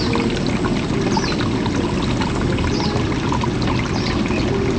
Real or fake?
real